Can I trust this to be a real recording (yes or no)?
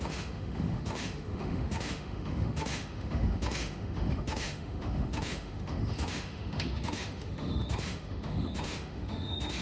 no